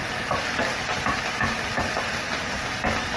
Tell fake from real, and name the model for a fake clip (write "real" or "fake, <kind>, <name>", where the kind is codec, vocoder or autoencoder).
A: real